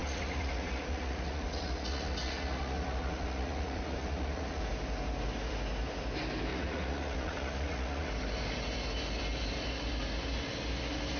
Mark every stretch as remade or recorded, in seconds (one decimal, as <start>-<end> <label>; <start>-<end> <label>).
0.0-4.6 remade; 4.6-6.5 recorded; 6.5-8.1 remade; 8.1-11.2 recorded

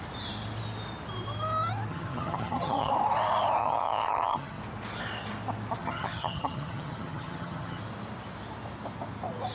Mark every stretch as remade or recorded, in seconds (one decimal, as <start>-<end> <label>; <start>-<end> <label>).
0.0-1.9 recorded; 1.9-2.9 remade; 2.9-3.6 recorded; 3.6-4.6 remade; 4.6-5.8 recorded; 5.8-7.8 remade; 7.8-9.5 recorded

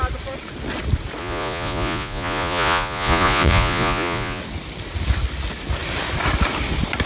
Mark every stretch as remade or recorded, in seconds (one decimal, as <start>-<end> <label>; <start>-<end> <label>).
0.0-1.2 recorded; 1.2-4.4 remade; 4.4-7.1 recorded